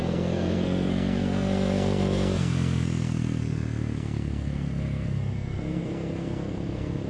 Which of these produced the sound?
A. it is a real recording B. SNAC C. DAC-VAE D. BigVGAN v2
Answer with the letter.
B